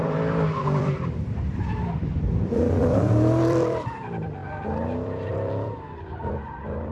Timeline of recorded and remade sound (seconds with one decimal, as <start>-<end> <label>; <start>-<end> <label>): 0.0-6.9 remade